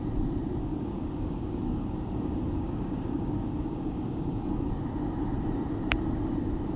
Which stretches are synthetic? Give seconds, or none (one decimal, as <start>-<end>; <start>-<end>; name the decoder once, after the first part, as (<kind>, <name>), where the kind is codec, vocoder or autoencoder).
0.6-4.7 (codec, DAC)

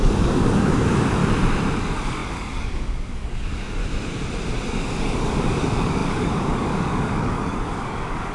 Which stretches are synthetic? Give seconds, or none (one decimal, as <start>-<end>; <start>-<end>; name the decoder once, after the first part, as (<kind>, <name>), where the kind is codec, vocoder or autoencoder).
0.0-1.2 (codec, DAC); 1.8-3.8; 4.7-8.3